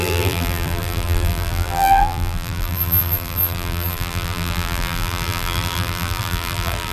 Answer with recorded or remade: remade